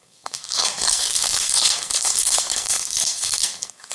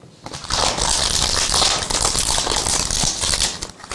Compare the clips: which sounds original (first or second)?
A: second